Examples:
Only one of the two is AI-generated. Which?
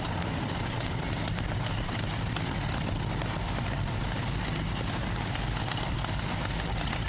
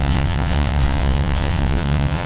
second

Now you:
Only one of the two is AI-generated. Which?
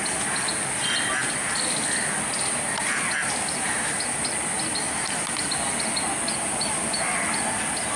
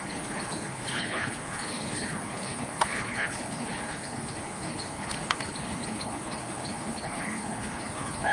second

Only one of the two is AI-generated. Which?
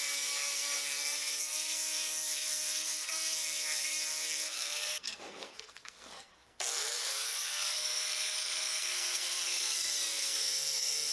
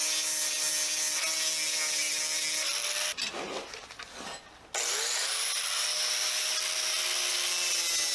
first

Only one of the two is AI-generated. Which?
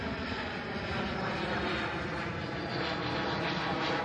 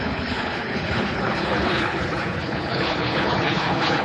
second